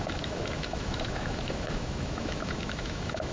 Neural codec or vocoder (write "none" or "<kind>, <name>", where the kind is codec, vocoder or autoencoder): autoencoder, DAC-VAE